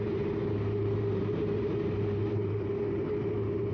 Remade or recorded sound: remade